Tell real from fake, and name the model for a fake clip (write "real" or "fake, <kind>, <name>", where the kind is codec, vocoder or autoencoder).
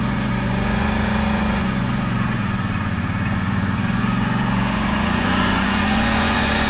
fake, vocoder, Vocos